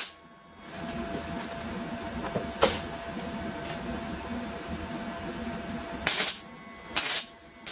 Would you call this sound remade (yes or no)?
no